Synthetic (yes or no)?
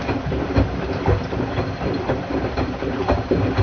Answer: yes